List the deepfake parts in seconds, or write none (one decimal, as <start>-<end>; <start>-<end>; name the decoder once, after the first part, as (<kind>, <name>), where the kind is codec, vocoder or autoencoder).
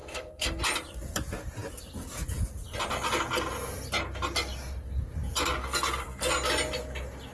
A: 0.0-0.6 (codec, SNAC); 5.6-6.3